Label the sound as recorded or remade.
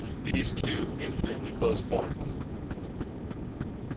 recorded